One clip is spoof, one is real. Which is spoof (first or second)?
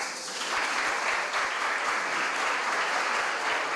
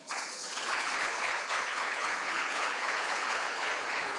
second